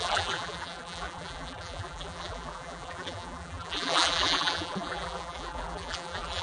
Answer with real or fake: fake